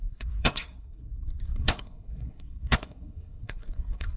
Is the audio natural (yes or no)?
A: no